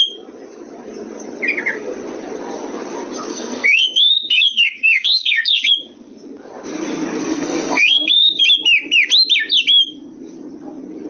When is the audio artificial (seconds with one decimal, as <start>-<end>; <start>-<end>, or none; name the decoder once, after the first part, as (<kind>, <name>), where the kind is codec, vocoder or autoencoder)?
3.3-5.7 (codec, SNAC); 7.2-8.4